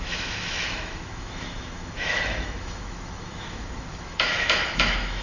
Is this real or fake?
fake